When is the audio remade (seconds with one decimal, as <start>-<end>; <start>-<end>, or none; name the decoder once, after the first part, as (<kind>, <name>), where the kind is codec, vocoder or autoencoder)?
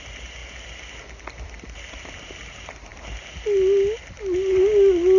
none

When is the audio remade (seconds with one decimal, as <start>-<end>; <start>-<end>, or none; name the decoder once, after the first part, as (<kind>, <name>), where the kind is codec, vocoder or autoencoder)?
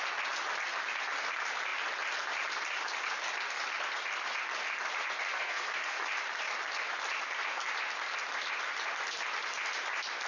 5.3-6.0 (codec, SNAC)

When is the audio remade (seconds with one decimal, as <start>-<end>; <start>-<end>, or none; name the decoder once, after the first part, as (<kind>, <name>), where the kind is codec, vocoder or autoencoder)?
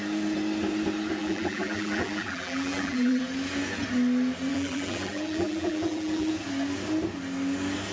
1.2-3.2 (vocoder, BigVGAN v2); 4.5-6.3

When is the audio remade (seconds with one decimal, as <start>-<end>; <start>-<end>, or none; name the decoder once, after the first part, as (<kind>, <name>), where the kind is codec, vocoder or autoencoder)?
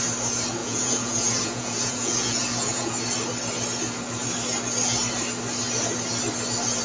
0.6-2.9 (vocoder, Vocos)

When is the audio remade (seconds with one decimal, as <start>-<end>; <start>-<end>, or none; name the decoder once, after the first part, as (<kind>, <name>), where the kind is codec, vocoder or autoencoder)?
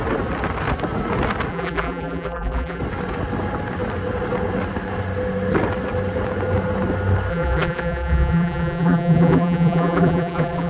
1.5-2.8 (vocoder, BigVGAN v2); 7.3-10.7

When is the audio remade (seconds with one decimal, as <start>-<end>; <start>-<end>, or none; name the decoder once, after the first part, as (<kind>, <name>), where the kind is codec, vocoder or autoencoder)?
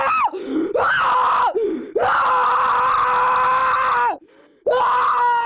none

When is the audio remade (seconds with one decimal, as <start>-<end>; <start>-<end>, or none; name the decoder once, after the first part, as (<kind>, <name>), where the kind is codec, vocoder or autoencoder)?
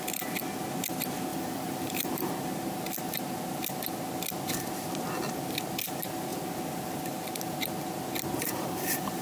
1.3-2.3 (vocoder, BigVGAN v2); 8.4-9.2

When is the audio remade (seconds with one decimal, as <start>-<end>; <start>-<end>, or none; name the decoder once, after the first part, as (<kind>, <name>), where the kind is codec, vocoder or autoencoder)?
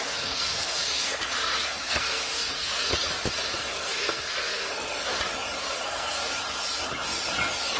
0.0-2.9 (codec, SNAC); 3.6-5.1; 5.6-6.2